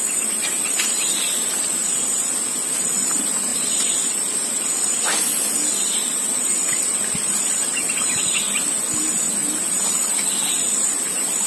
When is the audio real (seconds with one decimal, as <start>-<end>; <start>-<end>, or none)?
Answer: 0.0-11.5